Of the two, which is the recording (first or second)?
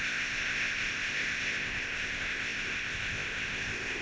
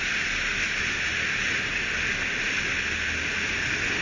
second